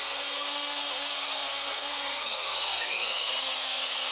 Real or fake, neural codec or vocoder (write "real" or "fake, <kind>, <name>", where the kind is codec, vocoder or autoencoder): fake, codec, SNAC